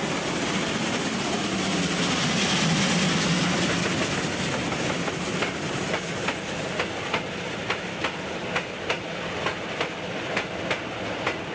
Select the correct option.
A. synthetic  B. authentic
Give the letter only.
B